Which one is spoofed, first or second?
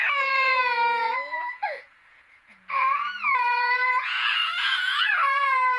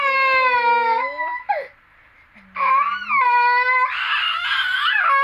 first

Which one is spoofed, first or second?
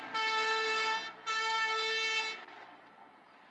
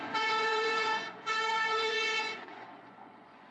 second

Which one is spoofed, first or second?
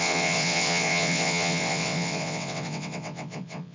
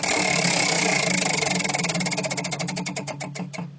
first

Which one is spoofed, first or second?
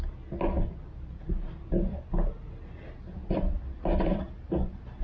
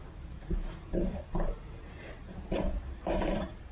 second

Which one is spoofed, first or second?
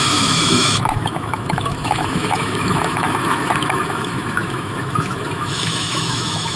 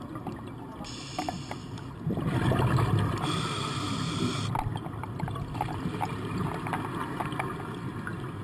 first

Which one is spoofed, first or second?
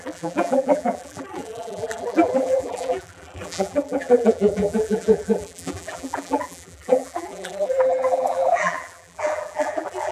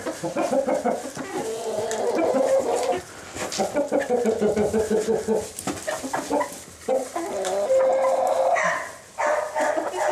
first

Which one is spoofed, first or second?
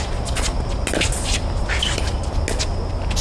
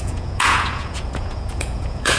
second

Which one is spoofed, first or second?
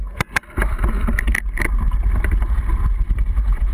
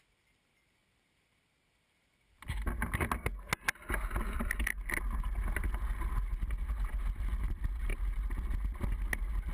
first